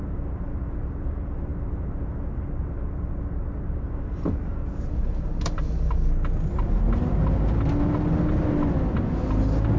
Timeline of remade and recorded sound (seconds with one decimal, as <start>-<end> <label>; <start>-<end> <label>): 0.0-9.8 recorded